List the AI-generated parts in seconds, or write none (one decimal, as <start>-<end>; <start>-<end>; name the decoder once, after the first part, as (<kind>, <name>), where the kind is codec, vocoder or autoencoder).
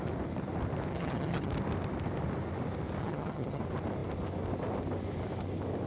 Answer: 0.9-1.5 (vocoder, HiFi-GAN); 3.0-3.6